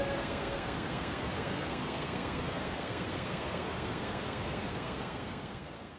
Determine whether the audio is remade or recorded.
remade